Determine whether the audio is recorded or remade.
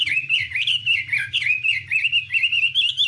recorded